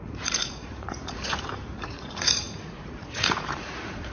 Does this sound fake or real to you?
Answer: fake